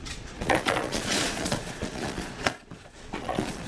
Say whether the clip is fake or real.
fake